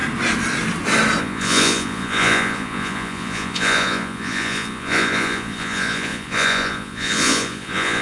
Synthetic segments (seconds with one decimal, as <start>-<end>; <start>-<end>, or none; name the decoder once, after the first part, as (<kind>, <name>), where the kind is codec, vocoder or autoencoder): 1.2-8.0 (vocoder, Vocos)